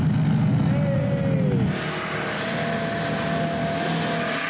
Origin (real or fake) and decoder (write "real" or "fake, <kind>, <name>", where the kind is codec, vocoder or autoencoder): real